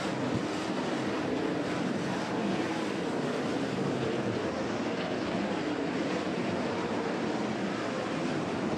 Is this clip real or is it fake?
fake